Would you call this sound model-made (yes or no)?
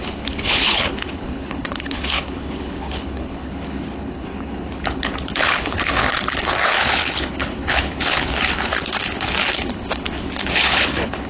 yes